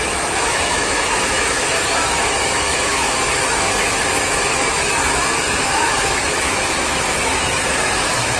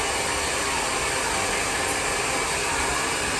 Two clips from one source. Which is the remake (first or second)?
first